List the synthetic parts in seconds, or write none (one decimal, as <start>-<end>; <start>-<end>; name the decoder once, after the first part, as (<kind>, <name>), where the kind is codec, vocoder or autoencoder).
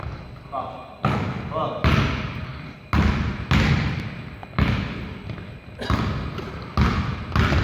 none